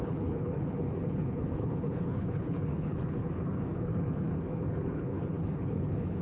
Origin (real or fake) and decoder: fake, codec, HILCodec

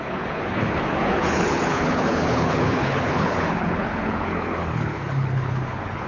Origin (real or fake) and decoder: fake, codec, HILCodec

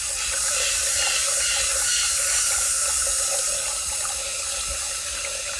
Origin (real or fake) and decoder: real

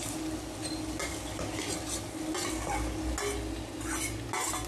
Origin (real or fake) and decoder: real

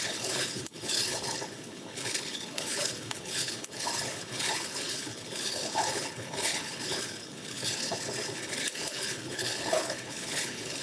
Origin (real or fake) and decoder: fake, codec, HILCodec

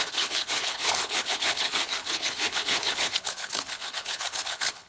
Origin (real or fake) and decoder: fake, codec, HILCodec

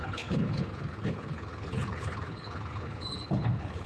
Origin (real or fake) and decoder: fake, codec, HILCodec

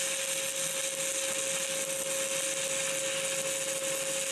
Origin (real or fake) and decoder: real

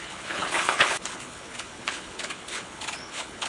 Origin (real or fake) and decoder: fake, codec, HILCodec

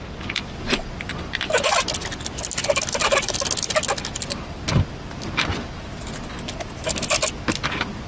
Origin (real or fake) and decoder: real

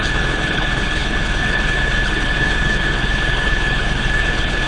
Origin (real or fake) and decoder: fake, codec, HILCodec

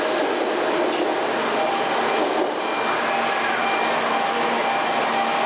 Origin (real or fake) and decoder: real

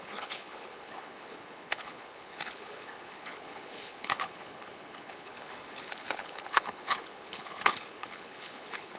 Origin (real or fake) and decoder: fake, codec, HILCodec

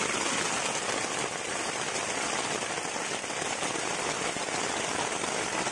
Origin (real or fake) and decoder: real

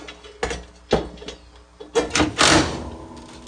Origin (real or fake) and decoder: real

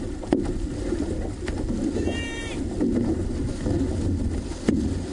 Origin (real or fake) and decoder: real